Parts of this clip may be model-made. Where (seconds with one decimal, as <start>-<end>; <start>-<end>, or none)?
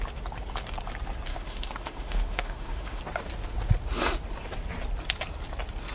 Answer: 1.3-3.0